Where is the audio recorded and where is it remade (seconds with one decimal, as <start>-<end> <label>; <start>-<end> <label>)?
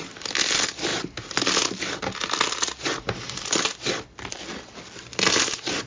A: 0.0-5.9 recorded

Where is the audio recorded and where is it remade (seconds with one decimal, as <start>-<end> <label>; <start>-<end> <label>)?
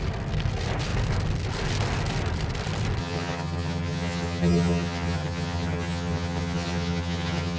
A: 0.0-3.0 recorded; 3.0-7.6 remade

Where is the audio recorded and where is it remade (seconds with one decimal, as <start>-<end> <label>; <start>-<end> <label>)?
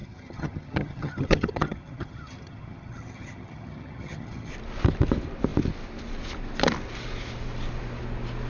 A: 0.0-4.5 remade; 4.5-8.5 recorded